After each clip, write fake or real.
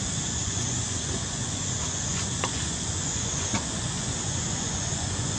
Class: fake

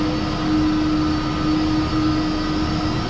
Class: real